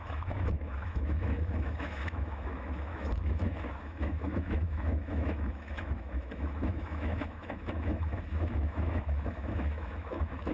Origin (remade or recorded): remade